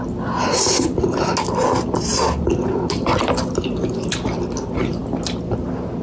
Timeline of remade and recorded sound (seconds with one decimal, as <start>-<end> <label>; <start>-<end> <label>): 0.0-6.0 recorded